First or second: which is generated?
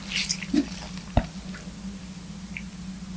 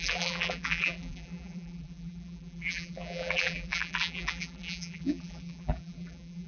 second